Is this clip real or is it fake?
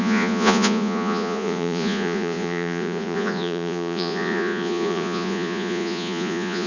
fake